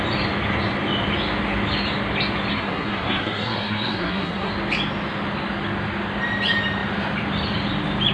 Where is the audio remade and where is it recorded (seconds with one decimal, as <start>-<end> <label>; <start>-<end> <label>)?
0.0-2.5 recorded; 2.5-4.5 remade; 4.5-8.1 recorded